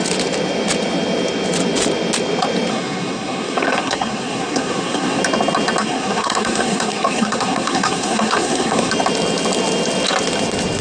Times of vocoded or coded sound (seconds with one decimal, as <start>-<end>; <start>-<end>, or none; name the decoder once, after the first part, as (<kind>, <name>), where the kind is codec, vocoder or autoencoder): 2.7-5.2 (codec, SNAC); 5.8-8.9